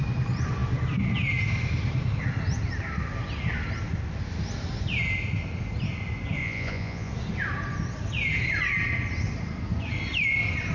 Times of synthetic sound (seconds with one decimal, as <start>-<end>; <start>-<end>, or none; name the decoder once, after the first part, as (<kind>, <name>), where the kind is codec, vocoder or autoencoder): 6.4-7.1 (vocoder, Vocos)